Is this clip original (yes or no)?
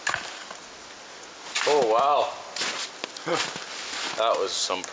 yes